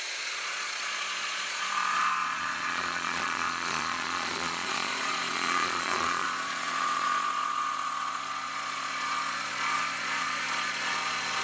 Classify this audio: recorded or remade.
remade